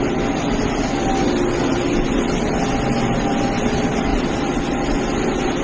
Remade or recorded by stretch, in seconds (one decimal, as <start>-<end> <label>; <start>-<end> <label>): 0.0-1.7 recorded; 1.7-2.5 remade; 2.5-4.1 recorded; 4.1-4.6 remade; 4.6-5.6 recorded